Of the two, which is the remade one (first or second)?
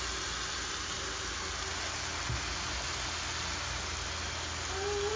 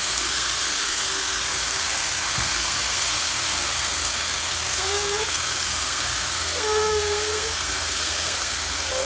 second